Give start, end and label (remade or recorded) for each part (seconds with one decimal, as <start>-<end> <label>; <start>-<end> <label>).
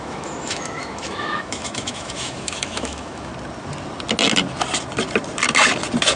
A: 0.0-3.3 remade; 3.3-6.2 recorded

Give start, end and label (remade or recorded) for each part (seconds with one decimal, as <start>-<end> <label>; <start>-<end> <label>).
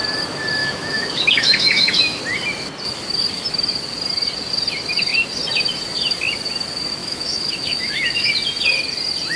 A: 0.0-0.6 recorded; 0.6-2.2 remade; 2.2-7.0 recorded; 7.0-8.3 remade; 8.3-9.4 recorded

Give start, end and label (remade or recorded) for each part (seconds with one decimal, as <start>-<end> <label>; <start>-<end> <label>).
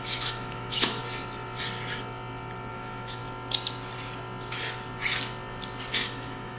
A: 0.0-1.0 remade; 1.0-2.7 recorded; 2.7-3.2 remade; 3.2-5.9 recorded; 5.9-6.6 remade